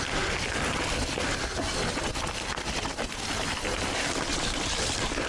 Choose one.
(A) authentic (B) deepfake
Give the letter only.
A